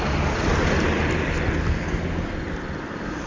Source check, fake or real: real